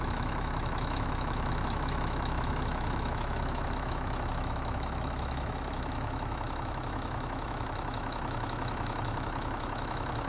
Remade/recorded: remade